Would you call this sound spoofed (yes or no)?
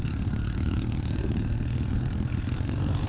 yes